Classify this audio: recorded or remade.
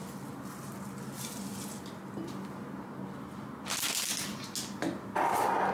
recorded